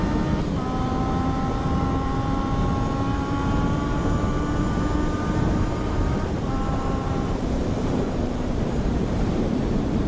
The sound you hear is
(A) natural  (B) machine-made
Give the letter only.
B